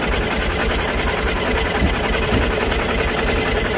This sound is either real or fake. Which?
real